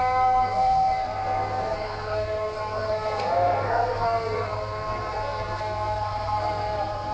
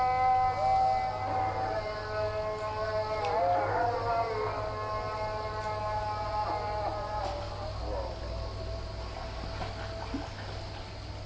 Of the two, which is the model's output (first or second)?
first